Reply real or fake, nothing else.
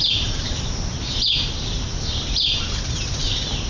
real